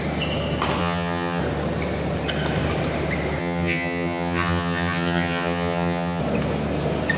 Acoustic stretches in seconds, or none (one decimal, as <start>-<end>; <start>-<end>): 0.0-0.8; 1.4-3.4; 6.2-7.2